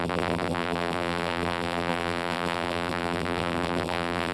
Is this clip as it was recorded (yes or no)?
no